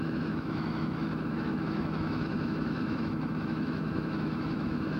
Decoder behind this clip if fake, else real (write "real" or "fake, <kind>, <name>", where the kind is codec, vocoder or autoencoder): fake, autoencoder, DAC-VAE